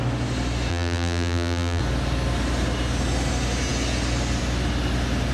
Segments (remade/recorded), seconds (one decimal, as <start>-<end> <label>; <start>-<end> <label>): 0.0-0.7 recorded; 0.7-1.8 remade; 1.8-5.3 recorded